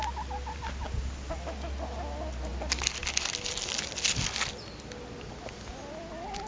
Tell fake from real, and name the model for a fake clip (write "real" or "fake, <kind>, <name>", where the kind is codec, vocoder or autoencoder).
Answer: real